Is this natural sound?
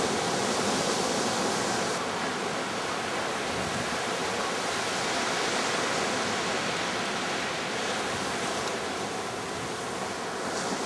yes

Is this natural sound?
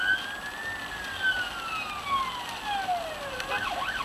yes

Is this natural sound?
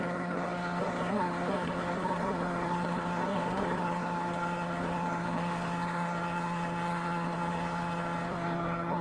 no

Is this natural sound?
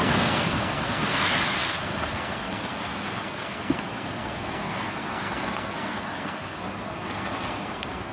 no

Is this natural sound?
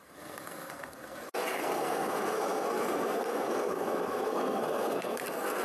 no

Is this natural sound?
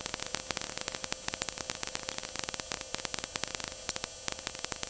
yes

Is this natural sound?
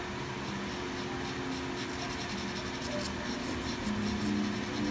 yes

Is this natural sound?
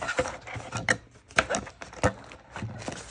yes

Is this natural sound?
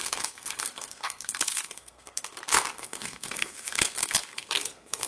no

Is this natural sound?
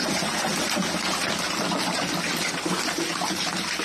yes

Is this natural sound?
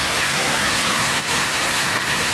no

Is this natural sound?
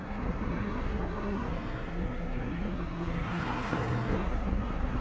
no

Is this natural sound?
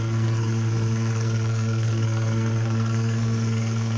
no